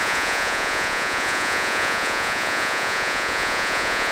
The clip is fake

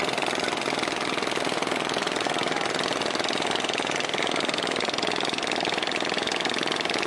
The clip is real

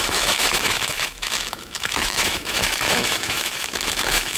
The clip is fake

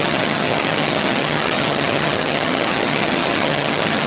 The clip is fake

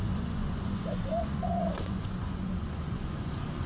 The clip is fake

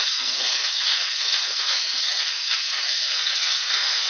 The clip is fake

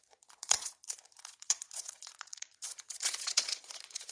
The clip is fake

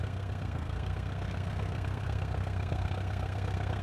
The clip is fake